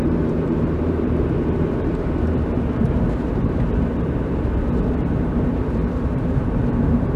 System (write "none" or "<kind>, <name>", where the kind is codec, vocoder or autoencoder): vocoder, BigVGAN v2